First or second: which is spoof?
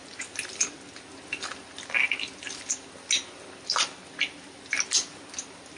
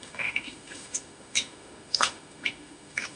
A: second